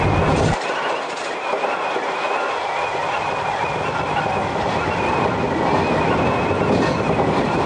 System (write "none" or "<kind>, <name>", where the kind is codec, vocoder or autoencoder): none